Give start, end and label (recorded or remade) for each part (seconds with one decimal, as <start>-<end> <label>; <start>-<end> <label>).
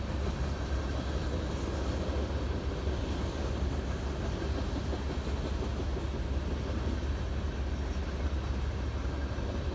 0.0-9.7 recorded